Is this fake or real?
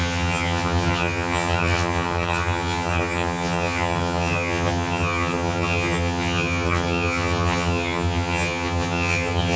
fake